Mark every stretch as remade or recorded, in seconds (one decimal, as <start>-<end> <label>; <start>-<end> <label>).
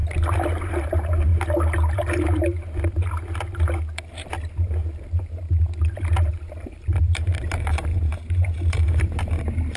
0.0-0.8 recorded; 0.8-1.3 remade; 1.3-6.3 recorded; 6.3-9.8 remade